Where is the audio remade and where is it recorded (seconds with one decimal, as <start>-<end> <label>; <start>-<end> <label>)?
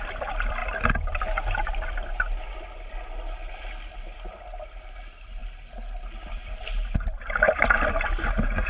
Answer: 0.0-0.6 remade; 0.6-4.8 recorded; 4.8-8.7 remade